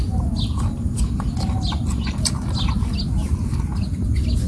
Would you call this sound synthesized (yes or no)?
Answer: no